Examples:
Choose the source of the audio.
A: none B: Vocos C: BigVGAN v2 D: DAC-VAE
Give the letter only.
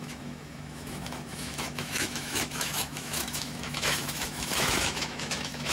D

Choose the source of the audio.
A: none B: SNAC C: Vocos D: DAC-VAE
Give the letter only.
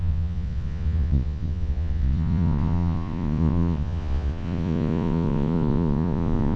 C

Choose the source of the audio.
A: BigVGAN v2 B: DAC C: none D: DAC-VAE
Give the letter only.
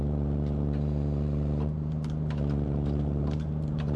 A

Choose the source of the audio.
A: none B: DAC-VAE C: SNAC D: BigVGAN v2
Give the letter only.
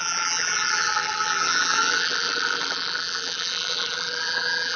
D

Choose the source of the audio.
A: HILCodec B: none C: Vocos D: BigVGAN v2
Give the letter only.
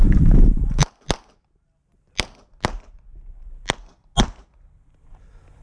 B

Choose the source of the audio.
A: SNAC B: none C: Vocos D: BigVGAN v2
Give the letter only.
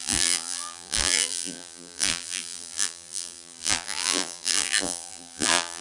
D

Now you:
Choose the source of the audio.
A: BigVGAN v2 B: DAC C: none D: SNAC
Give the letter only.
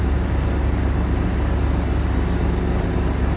C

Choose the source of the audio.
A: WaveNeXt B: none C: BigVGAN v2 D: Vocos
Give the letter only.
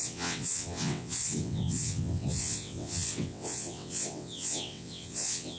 A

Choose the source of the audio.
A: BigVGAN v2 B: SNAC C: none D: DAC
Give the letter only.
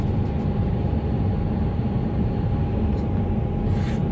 C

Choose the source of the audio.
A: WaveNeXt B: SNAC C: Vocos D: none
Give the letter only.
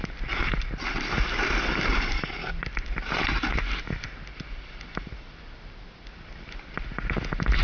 D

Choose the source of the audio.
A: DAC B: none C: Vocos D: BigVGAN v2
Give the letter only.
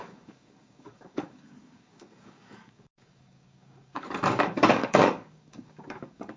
A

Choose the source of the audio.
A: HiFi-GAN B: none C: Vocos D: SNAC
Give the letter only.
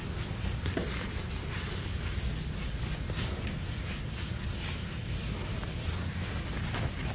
B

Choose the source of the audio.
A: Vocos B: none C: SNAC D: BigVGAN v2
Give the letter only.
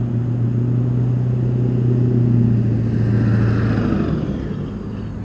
B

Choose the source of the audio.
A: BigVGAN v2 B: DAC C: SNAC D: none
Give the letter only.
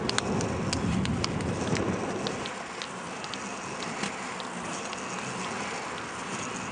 D